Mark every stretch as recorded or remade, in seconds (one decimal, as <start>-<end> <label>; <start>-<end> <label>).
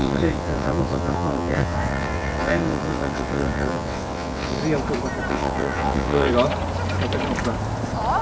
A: 0.0-4.6 remade; 4.6-5.3 recorded; 5.3-6.3 remade; 6.3-8.2 recorded